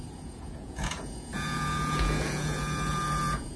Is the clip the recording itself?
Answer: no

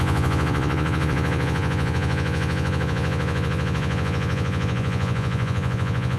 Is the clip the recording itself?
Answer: no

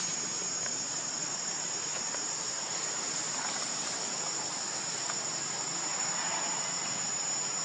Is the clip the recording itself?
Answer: yes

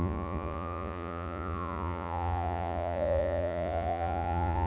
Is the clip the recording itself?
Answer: no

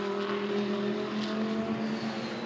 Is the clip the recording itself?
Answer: yes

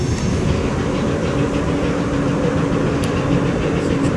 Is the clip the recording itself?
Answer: yes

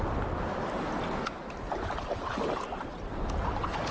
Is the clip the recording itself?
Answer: yes